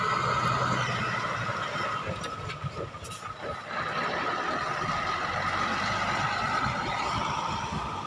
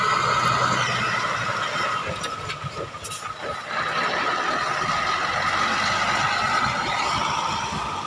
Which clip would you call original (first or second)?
second